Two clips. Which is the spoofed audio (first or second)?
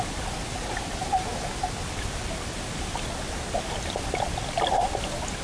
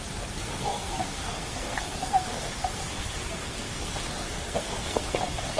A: second